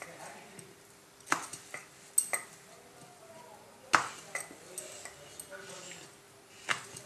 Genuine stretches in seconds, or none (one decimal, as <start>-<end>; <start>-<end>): 0.0-7.1